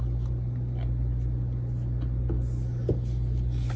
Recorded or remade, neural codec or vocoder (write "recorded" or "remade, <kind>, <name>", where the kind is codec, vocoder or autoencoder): recorded